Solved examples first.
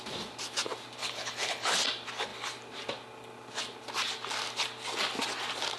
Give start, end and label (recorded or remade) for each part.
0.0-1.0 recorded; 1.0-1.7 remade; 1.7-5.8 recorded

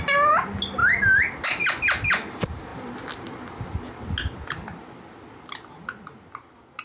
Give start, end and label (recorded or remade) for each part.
0.0-6.8 recorded